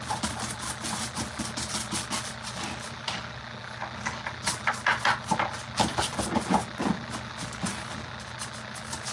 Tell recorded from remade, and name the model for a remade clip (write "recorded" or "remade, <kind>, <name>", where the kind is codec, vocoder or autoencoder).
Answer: recorded